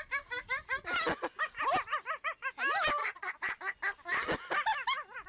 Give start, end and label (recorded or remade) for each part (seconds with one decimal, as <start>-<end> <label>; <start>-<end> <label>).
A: 0.0-3.0 recorded; 3.0-3.6 remade; 3.6-5.3 recorded